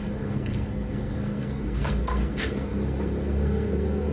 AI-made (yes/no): yes